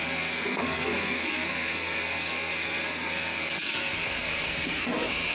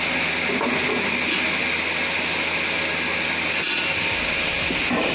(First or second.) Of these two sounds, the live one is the second